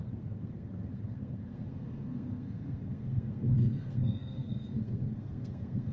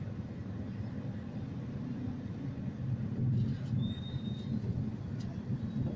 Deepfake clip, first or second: first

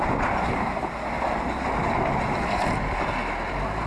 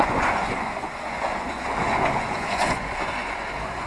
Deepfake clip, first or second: second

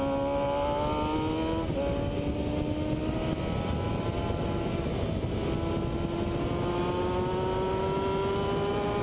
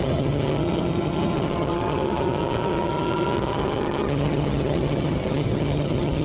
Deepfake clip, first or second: second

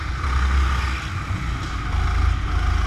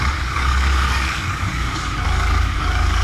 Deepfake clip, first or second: second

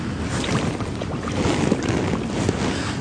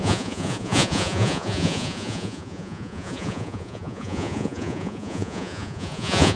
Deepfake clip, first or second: second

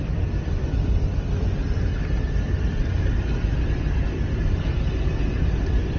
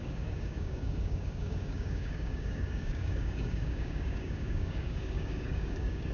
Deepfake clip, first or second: second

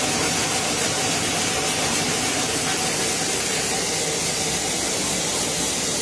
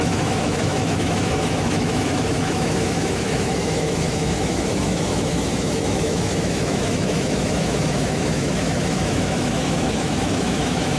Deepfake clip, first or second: second